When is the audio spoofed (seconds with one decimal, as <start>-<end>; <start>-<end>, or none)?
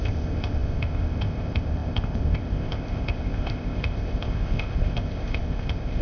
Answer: 0.0-6.0